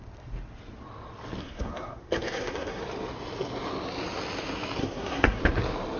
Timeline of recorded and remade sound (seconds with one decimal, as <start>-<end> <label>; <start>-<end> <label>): 0.0-1.4 recorded; 1.4-2.8 remade; 2.8-4.8 recorded; 4.8-5.4 remade; 5.4-6.0 recorded